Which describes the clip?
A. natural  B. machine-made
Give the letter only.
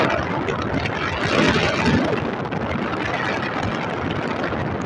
A